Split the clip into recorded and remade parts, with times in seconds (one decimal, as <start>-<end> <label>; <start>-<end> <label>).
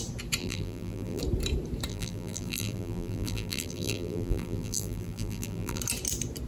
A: 0.0-0.4 recorded; 0.4-1.2 remade; 1.2-1.9 recorded; 1.9-5.8 remade; 5.8-6.5 recorded